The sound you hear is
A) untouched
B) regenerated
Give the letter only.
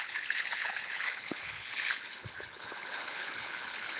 B